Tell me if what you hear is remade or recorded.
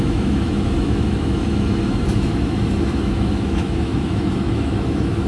remade